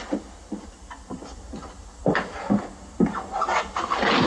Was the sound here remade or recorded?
recorded